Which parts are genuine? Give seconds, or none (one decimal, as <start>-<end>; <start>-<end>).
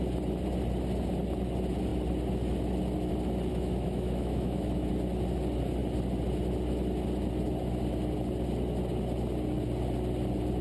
0.0-3.5; 4.9-10.6